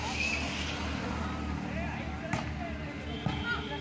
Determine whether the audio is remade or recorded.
recorded